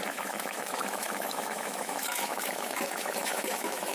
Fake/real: fake